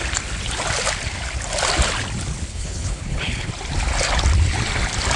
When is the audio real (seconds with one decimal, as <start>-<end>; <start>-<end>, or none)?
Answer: 0.0-2.5; 3.5-5.2